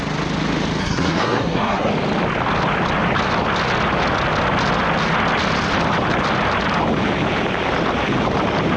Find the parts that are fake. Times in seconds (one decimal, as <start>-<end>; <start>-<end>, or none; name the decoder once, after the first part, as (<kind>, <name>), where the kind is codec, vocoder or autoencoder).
0.8-1.9 (codec, SNAC)